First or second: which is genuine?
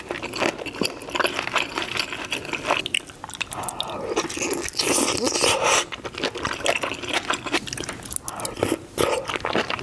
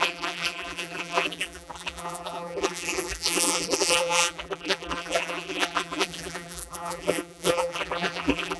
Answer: first